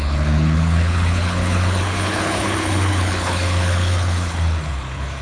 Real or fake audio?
fake